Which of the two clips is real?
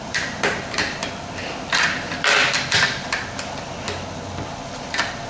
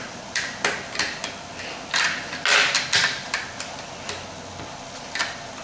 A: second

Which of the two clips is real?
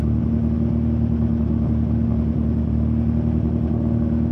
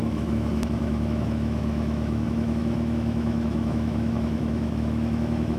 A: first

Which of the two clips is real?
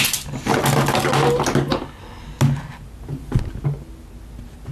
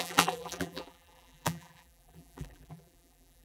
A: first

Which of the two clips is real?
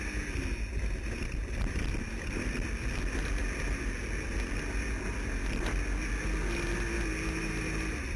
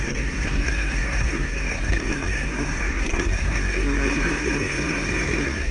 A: first